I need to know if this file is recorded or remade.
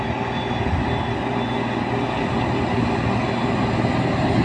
recorded